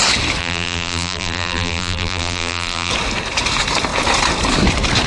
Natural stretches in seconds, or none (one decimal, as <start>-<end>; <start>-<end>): 0.0-0.4; 2.9-5.1